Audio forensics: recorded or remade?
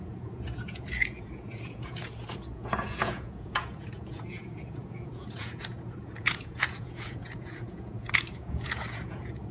remade